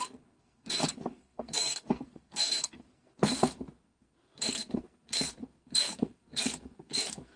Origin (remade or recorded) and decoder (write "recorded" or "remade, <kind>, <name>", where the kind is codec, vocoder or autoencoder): remade, codec, SNAC